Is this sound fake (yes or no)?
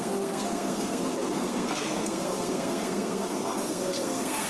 yes